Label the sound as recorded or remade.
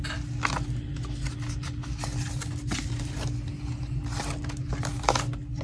recorded